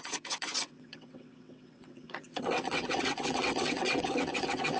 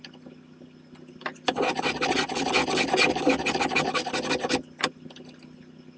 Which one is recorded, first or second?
second